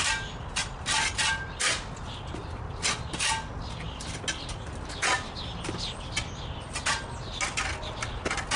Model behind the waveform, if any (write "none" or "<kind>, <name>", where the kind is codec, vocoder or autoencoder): none